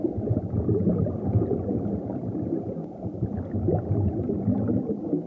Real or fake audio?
real